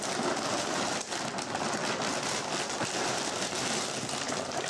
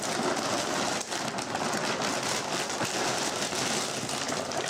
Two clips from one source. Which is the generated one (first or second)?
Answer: first